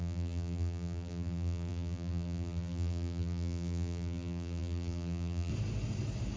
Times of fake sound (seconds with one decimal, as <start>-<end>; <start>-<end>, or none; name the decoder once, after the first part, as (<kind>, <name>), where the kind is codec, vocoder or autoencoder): 0.0-5.5 (vocoder, BigVGAN v2)